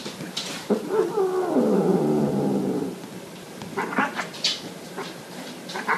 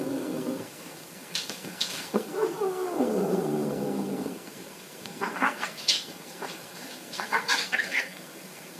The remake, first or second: second